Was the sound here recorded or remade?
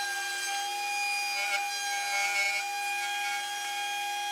recorded